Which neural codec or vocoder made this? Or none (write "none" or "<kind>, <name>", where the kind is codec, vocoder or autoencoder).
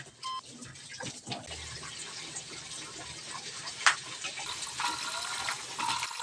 none